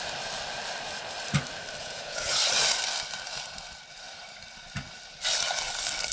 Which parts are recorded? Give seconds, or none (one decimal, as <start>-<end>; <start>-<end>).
0.0-1.8; 2.4-6.1